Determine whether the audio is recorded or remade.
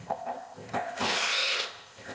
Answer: remade